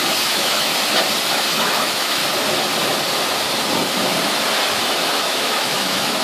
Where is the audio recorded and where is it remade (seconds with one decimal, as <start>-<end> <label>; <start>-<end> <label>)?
0.0-0.7 remade; 0.7-1.3 recorded; 1.3-2.2 remade; 2.2-5.2 recorded; 5.2-6.2 remade